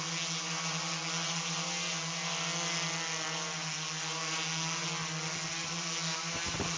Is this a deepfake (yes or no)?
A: no